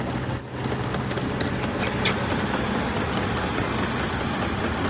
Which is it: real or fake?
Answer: real